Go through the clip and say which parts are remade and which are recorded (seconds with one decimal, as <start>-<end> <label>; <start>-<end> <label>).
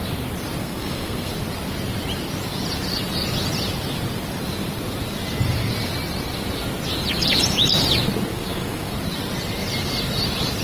0.0-0.6 recorded; 0.6-1.3 remade; 1.3-8.3 recorded; 8.3-8.9 remade; 8.9-10.6 recorded